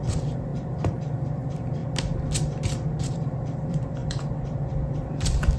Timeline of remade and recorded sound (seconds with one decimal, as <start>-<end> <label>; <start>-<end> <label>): 0.0-1.8 remade; 1.8-3.1 recorded; 3.1-5.6 remade

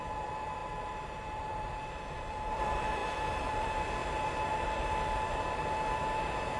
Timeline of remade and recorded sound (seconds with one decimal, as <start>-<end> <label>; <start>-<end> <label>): 0.0-4.0 remade; 4.0-6.6 recorded

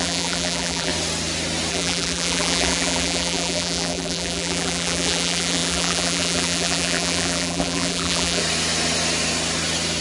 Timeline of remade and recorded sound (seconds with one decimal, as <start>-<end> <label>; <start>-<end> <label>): 0.0-0.9 remade; 0.9-1.7 recorded; 1.7-8.4 remade; 8.4-10.0 recorded

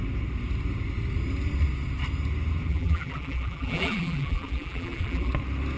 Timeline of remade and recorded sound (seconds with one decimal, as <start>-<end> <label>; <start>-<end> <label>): 0.0-2.7 recorded; 2.7-5.3 remade; 5.3-5.8 recorded

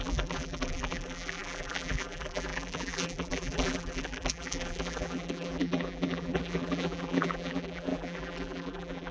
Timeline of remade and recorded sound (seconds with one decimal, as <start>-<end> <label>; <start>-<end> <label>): 0.0-9.1 remade

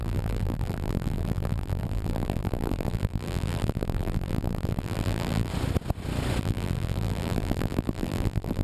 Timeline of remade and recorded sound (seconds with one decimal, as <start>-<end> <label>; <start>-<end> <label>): 0.0-5.5 remade; 5.5-6.4 recorded; 6.4-8.6 remade

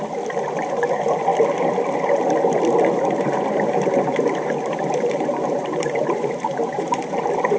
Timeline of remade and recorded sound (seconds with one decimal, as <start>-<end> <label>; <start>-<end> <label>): 0.0-1.3 remade; 1.3-3.7 recorded; 3.7-7.6 remade

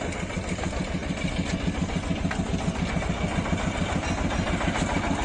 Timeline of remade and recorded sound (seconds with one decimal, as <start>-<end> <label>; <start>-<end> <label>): 0.0-5.2 recorded